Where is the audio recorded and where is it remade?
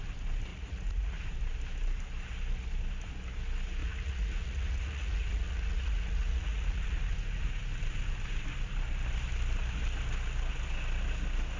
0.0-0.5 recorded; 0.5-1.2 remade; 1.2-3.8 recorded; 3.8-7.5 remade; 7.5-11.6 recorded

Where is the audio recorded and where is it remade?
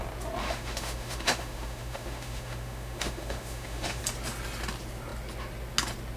0.0-0.4 recorded; 0.4-4.0 remade; 4.0-6.2 recorded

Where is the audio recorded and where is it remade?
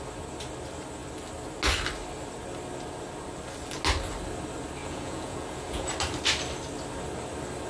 0.0-4.8 recorded; 4.8-5.9 remade; 5.9-7.7 recorded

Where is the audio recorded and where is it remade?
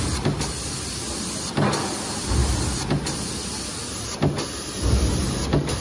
0.0-5.8 recorded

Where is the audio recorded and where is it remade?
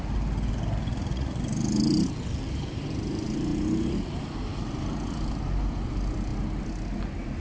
0.0-0.9 recorded; 0.9-1.4 remade; 1.4-7.4 recorded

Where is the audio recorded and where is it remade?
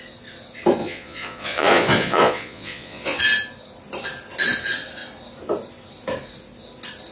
0.0-0.8 recorded; 0.8-3.2 remade; 3.2-7.1 recorded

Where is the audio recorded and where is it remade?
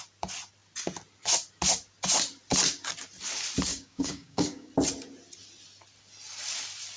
0.0-3.7 recorded; 3.7-4.7 remade; 4.7-7.0 recorded